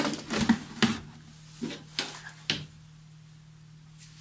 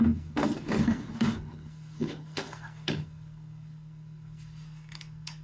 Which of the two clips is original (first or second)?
first